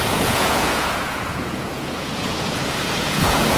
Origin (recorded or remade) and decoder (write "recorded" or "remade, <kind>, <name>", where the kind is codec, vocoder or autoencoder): remade, vocoder, Vocos